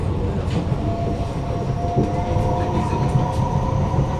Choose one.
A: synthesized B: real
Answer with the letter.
B